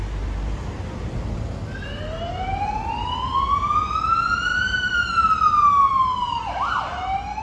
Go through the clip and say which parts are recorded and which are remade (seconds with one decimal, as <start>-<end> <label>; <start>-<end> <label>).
0.0-4.5 recorded; 4.5-5.1 remade; 5.1-7.4 recorded